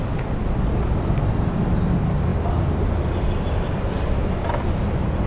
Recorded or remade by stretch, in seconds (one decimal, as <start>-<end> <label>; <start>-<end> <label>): 0.0-5.3 recorded

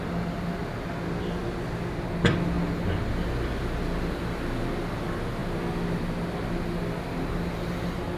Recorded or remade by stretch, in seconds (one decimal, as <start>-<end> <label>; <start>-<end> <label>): 0.0-8.2 recorded